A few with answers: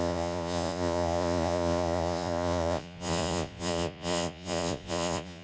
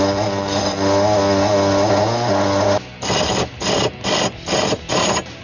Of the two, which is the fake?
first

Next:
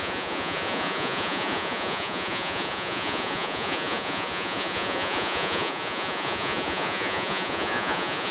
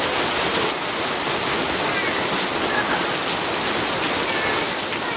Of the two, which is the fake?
first